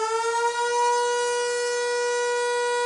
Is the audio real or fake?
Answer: real